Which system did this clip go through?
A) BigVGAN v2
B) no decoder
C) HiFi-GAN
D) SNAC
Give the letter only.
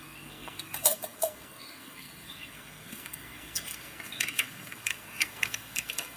D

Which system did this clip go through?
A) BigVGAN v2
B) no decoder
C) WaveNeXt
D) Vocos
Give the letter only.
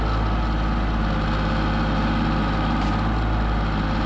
B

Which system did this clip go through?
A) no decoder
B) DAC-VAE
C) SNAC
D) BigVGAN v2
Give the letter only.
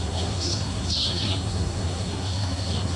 C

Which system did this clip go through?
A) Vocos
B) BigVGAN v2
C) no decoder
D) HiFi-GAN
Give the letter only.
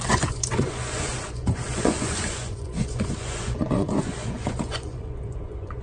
A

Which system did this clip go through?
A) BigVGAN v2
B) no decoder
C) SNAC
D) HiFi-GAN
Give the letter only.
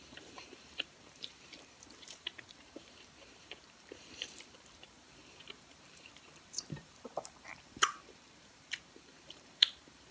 A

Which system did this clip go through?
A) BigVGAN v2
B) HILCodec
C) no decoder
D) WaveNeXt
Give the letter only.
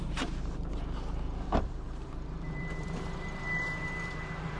A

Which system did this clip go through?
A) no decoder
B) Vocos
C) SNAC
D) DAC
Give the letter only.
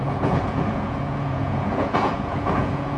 B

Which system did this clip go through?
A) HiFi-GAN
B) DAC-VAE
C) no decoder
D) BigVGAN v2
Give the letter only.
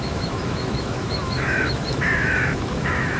B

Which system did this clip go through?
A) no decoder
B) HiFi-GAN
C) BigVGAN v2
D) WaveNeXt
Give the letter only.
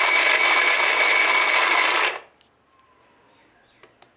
A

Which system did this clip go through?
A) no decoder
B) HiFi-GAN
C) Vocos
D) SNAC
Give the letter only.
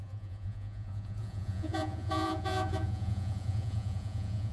C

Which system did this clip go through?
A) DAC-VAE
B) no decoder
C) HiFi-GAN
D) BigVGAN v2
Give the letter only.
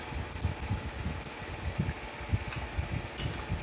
B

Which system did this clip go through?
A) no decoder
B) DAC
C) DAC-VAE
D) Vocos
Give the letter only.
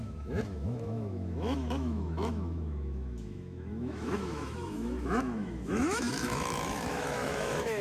C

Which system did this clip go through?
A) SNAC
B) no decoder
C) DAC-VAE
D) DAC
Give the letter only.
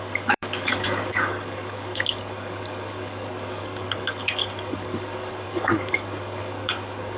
D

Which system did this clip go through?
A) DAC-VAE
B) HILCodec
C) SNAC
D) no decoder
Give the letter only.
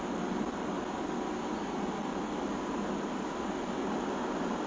D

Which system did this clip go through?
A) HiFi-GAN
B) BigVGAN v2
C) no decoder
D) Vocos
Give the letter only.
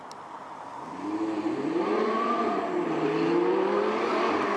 B